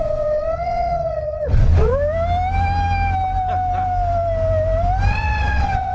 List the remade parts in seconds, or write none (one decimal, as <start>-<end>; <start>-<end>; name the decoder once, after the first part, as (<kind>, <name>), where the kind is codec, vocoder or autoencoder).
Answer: 0.0-1.9 (vocoder, WaveNeXt); 5.1-5.9